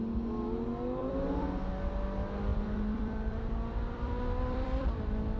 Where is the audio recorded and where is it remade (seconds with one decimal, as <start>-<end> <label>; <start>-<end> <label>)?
0.0-1.0 recorded; 1.0-1.7 remade; 1.7-2.5 recorded; 2.5-5.4 remade